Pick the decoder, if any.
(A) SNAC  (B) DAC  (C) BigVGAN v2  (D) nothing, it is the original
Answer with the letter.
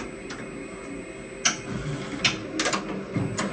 D